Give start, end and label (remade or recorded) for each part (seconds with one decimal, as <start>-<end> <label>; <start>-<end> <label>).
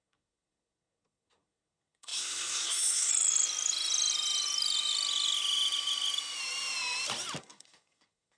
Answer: 0.0-3.1 remade; 3.1-7.4 recorded; 7.4-8.4 remade